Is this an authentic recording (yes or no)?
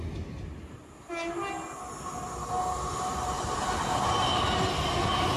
yes